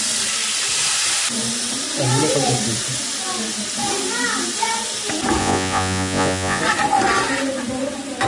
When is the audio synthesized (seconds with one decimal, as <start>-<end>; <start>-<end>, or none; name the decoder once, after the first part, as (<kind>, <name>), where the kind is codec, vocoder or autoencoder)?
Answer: 5.4-6.6 (vocoder, Vocos)